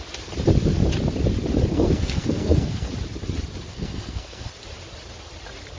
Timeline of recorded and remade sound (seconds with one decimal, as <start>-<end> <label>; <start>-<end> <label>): 0.0-1.7 recorded; 1.7-2.9 remade; 2.9-3.7 recorded; 3.7-4.5 remade; 4.5-5.8 recorded